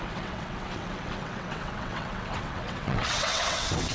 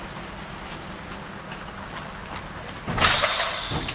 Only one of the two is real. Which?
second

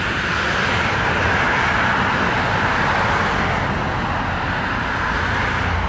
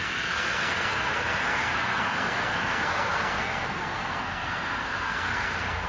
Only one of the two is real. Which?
first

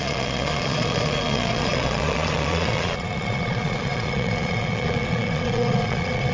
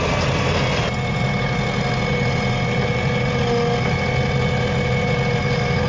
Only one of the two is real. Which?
second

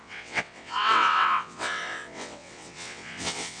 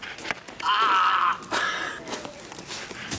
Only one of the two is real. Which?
second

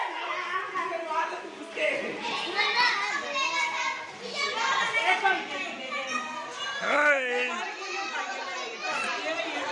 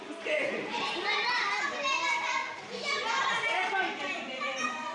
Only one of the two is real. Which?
first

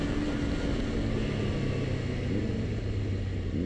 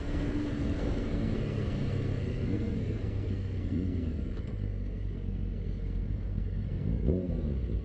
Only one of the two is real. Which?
first